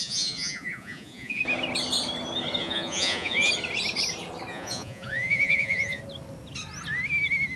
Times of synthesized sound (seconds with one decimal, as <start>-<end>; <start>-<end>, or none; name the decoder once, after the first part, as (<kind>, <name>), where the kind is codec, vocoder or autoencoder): 0.0-1.4 (vocoder, Vocos); 2.6-3.5; 4.5-6.0